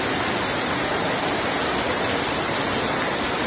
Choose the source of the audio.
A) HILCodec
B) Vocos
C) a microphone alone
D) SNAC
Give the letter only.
C